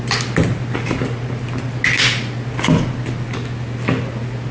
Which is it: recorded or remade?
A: recorded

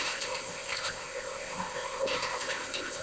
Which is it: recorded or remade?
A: remade